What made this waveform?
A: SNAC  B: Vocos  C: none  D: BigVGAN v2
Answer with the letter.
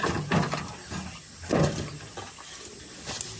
C